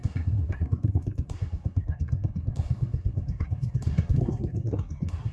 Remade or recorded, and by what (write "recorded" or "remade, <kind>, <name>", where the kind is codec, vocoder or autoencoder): remade, codec, SNAC